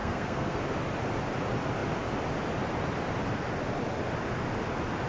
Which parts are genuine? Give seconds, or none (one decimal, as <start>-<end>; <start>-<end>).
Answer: 0.6-5.1